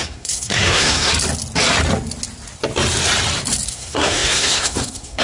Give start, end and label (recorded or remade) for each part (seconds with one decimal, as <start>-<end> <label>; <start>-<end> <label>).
0.0-1.1 remade; 1.1-3.7 recorded; 3.7-5.2 remade